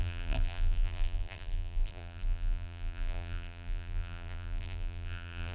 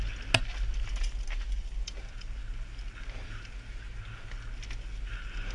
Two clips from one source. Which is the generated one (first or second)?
first